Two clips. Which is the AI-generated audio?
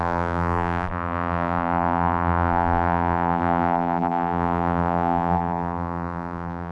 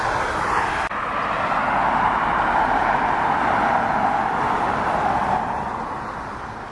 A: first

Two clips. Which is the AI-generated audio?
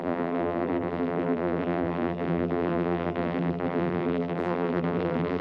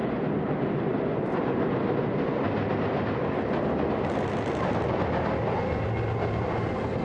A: first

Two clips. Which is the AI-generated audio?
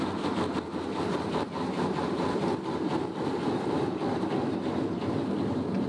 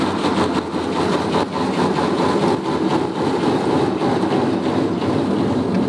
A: first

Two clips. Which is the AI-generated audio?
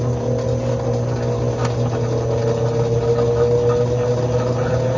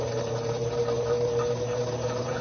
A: second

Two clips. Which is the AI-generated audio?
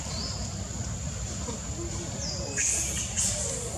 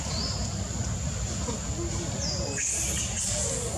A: first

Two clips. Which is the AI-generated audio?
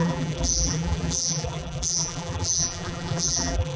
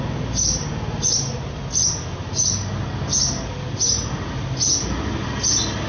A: first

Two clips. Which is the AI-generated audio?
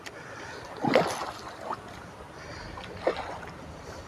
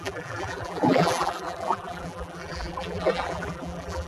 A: second